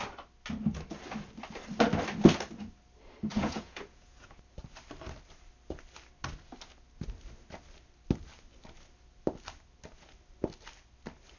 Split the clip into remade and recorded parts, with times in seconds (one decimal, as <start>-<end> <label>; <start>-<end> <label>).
0.0-3.3 recorded; 3.3-4.4 remade; 4.4-11.4 recorded